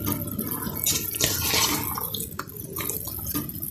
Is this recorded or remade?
recorded